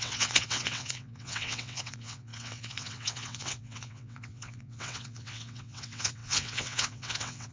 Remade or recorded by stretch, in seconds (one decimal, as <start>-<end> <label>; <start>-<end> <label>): 0.0-7.5 remade